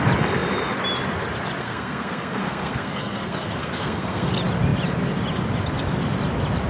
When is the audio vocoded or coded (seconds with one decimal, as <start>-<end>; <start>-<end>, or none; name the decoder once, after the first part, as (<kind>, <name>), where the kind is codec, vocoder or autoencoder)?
1.6-4.3 (codec, SNAC)